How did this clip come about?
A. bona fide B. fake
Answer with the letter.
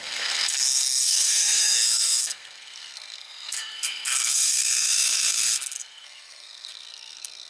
B